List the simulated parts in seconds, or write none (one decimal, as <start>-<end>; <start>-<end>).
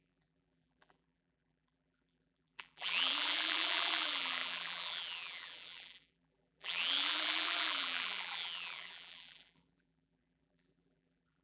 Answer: 0.0-11.4